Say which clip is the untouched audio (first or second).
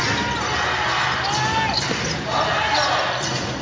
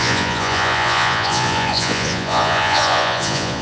first